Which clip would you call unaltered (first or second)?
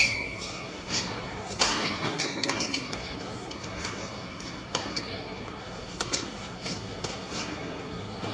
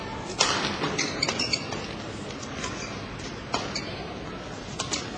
second